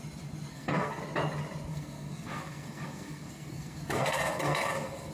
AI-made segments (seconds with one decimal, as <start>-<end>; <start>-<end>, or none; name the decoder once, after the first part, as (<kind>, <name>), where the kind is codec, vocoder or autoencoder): 0.5-1.0 (codec, SNAC); 1.7-5.1